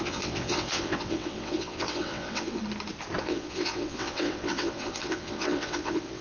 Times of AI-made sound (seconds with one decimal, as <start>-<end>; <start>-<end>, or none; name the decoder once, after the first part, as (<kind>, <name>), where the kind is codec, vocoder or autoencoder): 0.0-2.6 (vocoder, WaveNeXt); 3.2-6.2